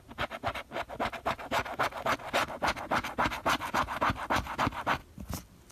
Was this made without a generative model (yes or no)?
yes